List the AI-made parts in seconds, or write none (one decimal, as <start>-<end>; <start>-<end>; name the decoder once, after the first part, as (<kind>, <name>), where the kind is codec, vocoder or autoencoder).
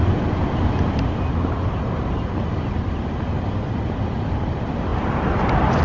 none